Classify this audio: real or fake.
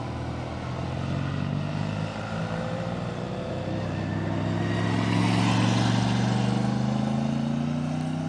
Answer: real